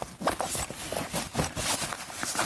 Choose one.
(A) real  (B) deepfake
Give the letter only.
A